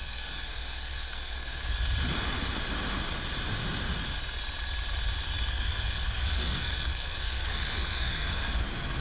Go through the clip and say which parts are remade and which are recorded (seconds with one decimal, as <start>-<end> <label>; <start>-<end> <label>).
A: 0.0-1.6 remade; 1.6-5.5 recorded; 5.5-9.0 remade